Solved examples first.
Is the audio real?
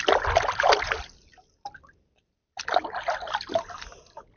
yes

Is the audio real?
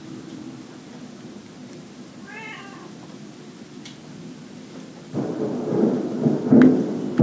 yes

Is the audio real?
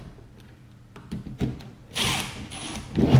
no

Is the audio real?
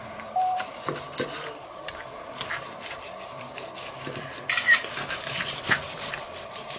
no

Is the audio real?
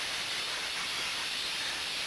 no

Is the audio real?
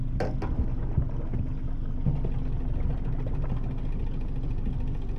yes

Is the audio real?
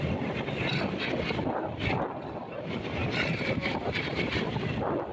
no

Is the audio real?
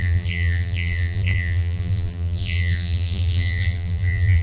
no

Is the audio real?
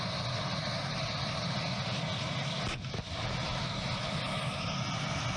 yes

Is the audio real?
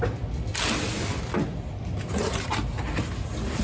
yes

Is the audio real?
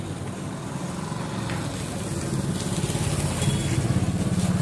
yes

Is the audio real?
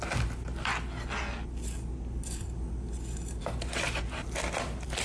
yes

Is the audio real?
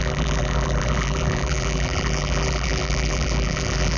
no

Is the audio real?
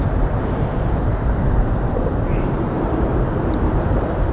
no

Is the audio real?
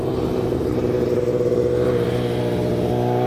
yes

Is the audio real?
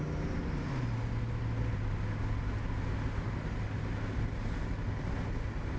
yes